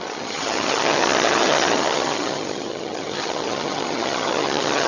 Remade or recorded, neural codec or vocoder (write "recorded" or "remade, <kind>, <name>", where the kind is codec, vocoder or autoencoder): remade, vocoder, HiFi-GAN